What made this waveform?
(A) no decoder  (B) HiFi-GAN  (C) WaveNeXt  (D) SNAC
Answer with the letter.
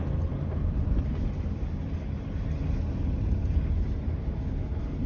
A